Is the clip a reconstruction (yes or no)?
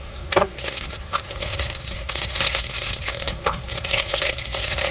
yes